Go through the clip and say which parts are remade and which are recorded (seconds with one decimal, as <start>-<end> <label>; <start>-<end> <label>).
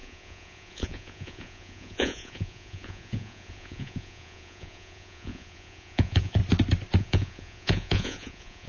0.0-6.4 remade; 6.4-7.0 recorded; 7.0-8.7 remade